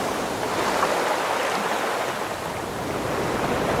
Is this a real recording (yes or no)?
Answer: yes